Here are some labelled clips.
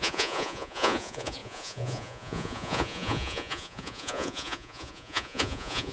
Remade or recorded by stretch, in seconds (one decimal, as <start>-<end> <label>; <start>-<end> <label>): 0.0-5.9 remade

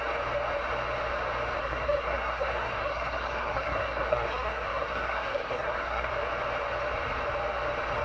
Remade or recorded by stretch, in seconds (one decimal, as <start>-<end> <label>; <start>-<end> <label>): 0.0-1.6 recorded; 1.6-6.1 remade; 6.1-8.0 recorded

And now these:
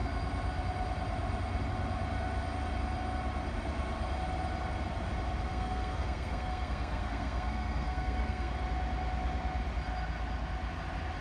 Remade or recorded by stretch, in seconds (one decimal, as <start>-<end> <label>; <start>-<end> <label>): 0.0-5.5 recorded; 5.5-8.5 remade; 8.5-11.2 recorded